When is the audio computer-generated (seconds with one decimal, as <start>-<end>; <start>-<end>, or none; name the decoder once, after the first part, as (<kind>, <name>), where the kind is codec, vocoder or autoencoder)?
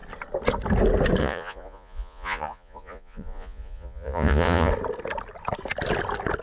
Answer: 1.2-4.7 (vocoder, Vocos)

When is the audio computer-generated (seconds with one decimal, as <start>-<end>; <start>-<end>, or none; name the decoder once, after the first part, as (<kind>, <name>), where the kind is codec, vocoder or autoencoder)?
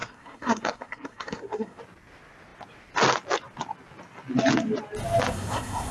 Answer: 0.0-1.8 (codec, SNAC); 5.3-5.9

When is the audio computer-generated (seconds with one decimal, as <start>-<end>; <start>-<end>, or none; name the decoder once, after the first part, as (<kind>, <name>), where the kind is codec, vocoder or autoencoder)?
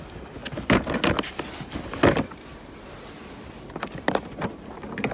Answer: none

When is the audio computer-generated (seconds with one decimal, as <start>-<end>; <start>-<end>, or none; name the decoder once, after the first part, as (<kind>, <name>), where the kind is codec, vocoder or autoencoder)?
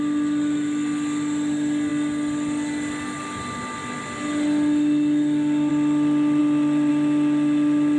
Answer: none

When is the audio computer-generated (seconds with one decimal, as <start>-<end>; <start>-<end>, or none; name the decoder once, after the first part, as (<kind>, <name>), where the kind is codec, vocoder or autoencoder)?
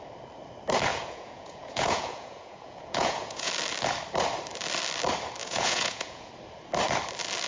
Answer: 0.9-3.5 (vocoder, Vocos); 5.4-6.3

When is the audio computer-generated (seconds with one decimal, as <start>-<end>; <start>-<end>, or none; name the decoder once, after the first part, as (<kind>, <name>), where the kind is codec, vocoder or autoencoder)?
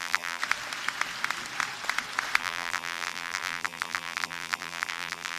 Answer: 0.0-0.4 (vocoder, BigVGAN v2); 2.4-5.4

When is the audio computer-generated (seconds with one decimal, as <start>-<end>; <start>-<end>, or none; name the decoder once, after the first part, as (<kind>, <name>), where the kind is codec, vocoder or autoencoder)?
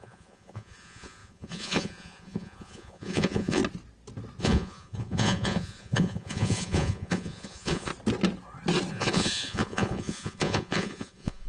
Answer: 0.0-3.6 (vocoder, Vocos); 4.4-7.9; 8.9-11.5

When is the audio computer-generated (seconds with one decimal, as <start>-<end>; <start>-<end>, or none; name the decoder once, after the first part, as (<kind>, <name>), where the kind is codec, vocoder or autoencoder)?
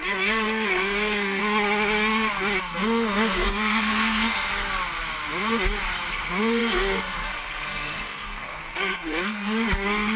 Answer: 0.0-1.4 (codec, SNAC); 2.6-4.5; 6.1-10.2